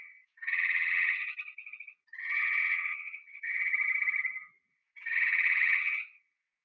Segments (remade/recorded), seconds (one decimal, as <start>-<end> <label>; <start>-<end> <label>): 0.0-1.3 remade; 1.3-2.2 recorded; 2.2-3.7 remade; 3.7-4.7 recorded; 4.7-6.6 remade